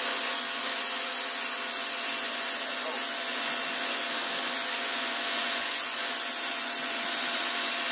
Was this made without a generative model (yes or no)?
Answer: no